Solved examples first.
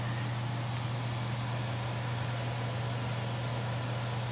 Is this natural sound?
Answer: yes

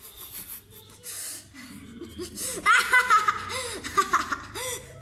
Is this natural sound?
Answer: yes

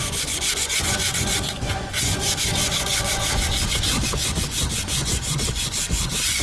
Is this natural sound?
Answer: no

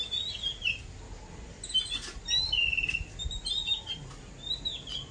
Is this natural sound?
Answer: yes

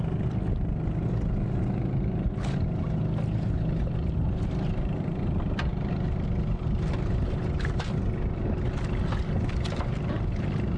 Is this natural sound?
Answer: yes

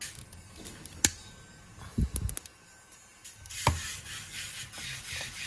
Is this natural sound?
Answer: yes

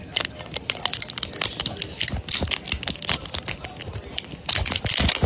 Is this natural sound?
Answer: yes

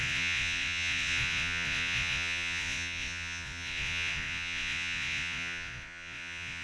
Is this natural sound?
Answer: no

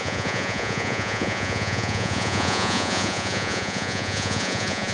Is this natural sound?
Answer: no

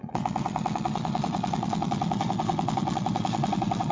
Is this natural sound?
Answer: no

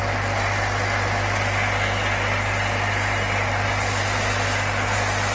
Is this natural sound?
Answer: yes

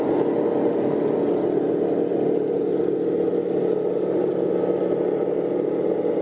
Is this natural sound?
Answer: yes